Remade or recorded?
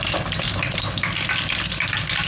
recorded